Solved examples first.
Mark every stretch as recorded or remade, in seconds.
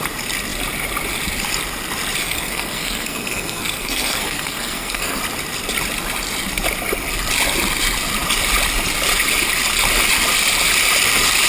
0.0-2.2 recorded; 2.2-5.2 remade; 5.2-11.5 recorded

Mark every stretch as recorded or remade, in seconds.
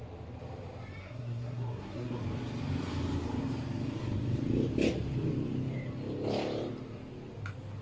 0.0-1.0 recorded; 1.0-2.2 remade; 2.2-7.8 recorded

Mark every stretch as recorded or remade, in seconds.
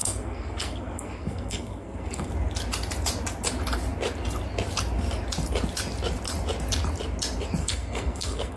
0.0-2.3 remade; 2.3-7.6 recorded; 7.6-8.6 remade